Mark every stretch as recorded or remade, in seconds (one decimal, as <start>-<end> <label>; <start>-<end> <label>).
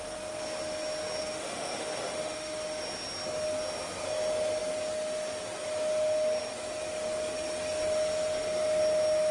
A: 0.0-1.2 recorded; 1.2-2.8 remade; 2.8-9.3 recorded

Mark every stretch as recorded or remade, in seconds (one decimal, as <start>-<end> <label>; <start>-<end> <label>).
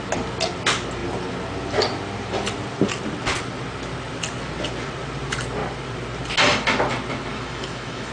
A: 0.0-7.3 recorded; 7.3-8.1 remade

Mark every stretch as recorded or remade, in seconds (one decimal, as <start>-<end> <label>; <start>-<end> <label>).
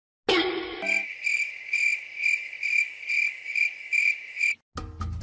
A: 0.0-5.2 recorded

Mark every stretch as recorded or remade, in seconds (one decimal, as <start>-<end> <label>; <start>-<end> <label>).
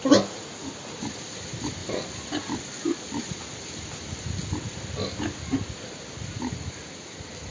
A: 0.0-7.5 recorded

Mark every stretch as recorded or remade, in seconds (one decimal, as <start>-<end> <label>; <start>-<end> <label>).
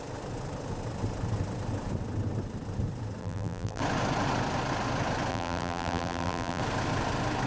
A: 0.0-3.2 recorded; 3.2-3.8 remade; 3.8-5.3 recorded; 5.3-6.6 remade; 6.6-7.5 recorded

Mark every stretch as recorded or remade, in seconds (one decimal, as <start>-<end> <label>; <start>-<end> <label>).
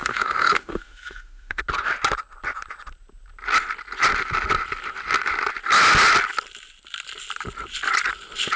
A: 0.0-1.6 remade; 1.6-8.6 recorded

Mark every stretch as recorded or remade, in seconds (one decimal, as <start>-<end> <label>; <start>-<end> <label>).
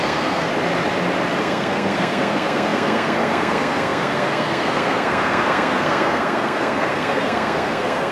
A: 0.0-0.5 remade; 0.5-1.4 recorded; 1.4-8.1 remade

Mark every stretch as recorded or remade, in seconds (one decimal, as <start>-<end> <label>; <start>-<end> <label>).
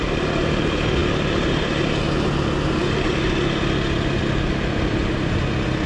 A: 0.0-5.9 recorded